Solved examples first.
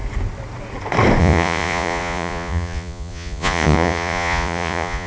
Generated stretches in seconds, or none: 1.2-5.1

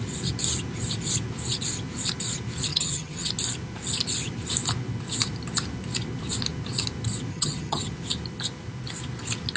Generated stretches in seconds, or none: 2.7-3.3; 7.3-7.9